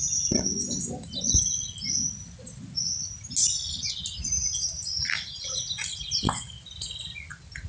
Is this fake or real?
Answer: real